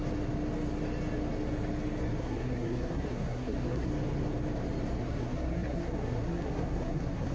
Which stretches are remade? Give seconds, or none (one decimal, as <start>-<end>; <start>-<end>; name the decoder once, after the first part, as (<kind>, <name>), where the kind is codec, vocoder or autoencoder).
2.2-3.9 (codec, SNAC); 5.0-7.3